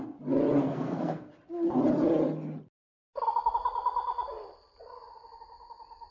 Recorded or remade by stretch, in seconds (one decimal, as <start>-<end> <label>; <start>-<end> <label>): 0.0-0.6 recorded; 0.6-1.3 remade; 1.3-6.1 recorded